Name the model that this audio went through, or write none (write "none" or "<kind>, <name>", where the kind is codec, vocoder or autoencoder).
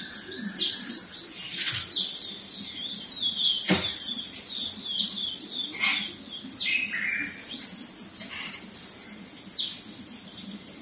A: none